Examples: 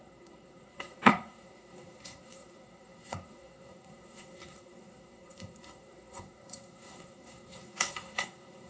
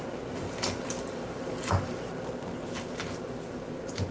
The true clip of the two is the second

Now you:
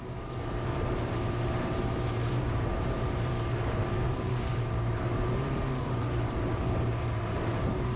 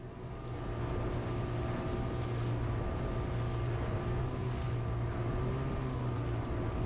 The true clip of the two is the second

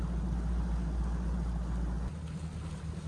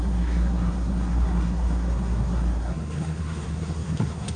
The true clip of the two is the first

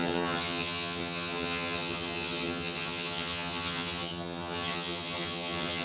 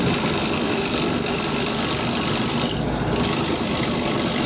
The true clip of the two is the second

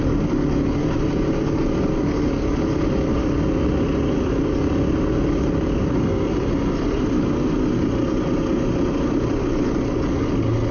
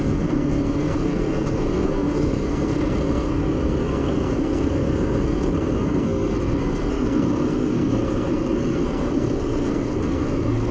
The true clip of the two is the first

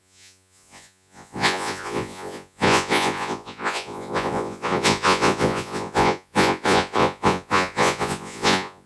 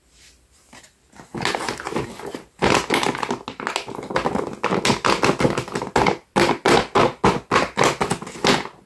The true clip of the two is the second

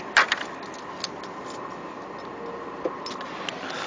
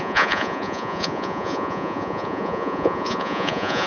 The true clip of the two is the first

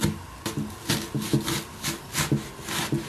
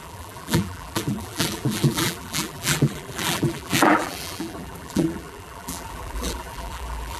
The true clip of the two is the first